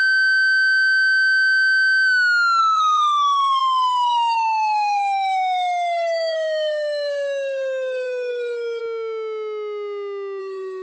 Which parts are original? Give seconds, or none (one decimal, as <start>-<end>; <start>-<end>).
0.0-2.6; 8.8-10.4